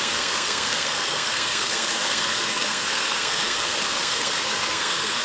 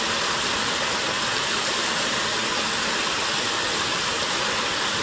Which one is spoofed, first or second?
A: first